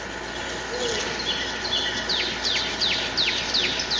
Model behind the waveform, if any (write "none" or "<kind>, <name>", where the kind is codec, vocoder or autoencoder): none